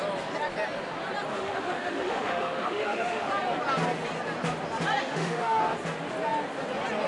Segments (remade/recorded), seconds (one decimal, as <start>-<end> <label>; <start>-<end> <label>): 0.0-1.3 recorded; 1.3-3.3 remade; 3.3-5.0 recorded; 5.0-5.6 remade; 5.6-7.1 recorded